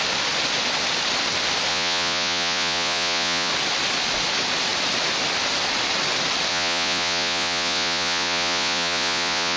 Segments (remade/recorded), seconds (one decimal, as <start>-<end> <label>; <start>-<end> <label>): 0.0-1.7 recorded; 1.7-3.5 remade; 3.5-6.5 recorded; 6.5-9.6 remade